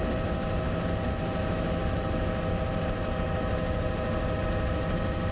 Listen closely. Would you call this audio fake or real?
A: real